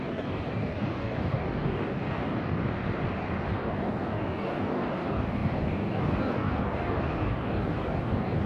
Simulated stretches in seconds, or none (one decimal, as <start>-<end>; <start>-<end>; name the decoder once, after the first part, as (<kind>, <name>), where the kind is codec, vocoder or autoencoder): 0.0-2.6 (codec, DAC); 3.5-8.5